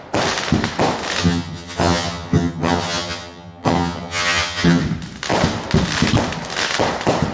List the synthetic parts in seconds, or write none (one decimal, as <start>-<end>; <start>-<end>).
1.2-4.8